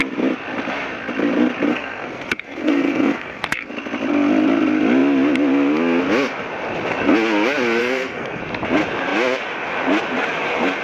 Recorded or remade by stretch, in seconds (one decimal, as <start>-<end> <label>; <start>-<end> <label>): 0.0-1.7 recorded; 1.7-3.7 remade; 3.7-7.8 recorded; 7.8-8.4 remade; 8.4-10.8 recorded